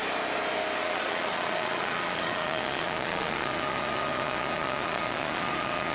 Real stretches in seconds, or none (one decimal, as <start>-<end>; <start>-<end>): 0.0-0.8